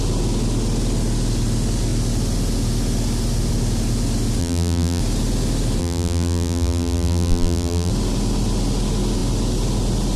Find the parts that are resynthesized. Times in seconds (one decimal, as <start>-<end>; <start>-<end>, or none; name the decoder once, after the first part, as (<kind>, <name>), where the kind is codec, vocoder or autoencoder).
4.4-5.0 (vocoder, BigVGAN v2); 5.8-7.9

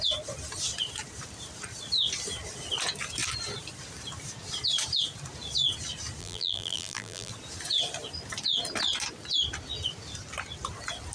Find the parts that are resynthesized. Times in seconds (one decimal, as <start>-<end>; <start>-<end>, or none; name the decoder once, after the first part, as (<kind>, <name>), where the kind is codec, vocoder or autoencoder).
6.2-7.3 (vocoder, BigVGAN v2)

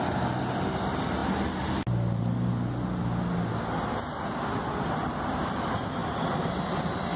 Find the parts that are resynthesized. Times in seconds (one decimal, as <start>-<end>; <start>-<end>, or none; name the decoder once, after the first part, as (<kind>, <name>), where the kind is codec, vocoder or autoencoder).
6.0-6.6 (vocoder, BigVGAN v2)

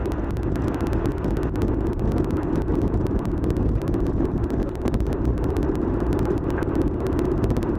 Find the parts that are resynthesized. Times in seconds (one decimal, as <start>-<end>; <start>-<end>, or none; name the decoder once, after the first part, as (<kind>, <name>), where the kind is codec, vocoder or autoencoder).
2.7-7.8 (vocoder, BigVGAN v2)

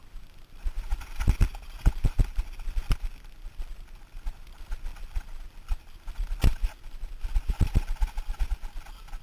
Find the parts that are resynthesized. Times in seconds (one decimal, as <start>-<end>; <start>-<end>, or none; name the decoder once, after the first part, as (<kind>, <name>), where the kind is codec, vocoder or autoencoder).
none